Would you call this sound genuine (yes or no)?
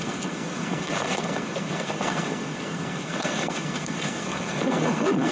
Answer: no